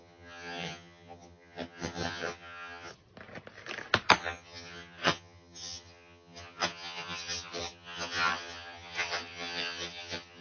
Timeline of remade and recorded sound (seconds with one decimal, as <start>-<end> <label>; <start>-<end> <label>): 0.0-2.9 remade; 2.9-4.2 recorded; 4.2-10.4 remade